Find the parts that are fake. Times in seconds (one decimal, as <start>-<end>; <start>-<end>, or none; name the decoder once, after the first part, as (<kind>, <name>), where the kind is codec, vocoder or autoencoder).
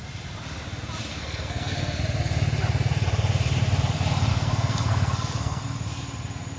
1.1-2.0 (codec, SNAC); 4.3-5.6